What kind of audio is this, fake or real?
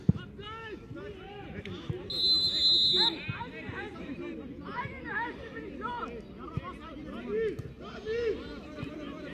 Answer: real